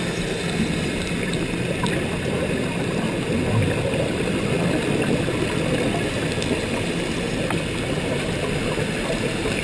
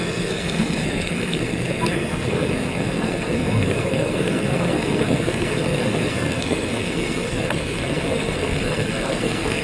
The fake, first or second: second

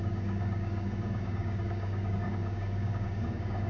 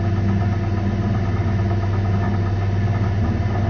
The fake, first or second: first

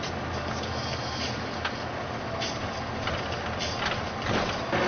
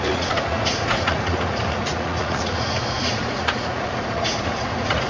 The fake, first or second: second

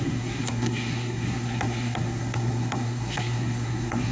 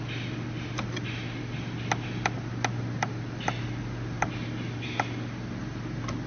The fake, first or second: first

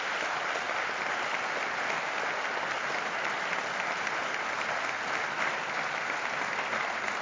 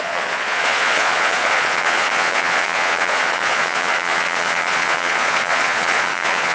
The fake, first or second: second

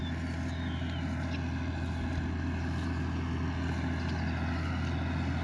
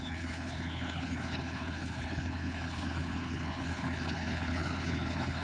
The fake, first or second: second